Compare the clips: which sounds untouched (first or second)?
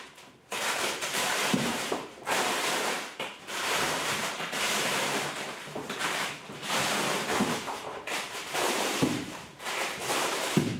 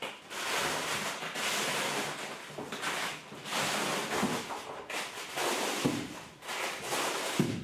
second